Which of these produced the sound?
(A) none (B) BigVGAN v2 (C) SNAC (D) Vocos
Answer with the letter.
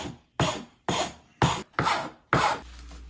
A